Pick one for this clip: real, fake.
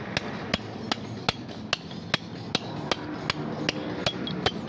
real